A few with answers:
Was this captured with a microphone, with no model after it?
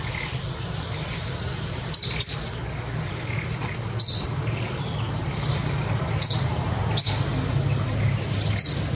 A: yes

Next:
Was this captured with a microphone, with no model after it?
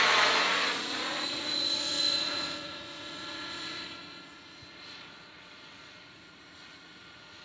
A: no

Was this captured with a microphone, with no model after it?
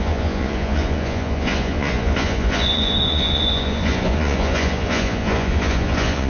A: no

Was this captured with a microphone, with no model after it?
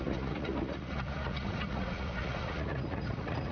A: no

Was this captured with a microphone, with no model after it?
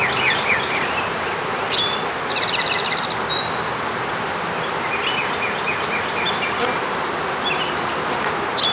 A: yes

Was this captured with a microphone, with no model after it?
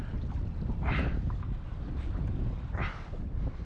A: yes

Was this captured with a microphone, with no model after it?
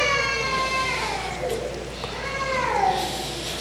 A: yes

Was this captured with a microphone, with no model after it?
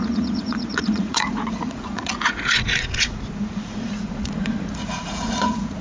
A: no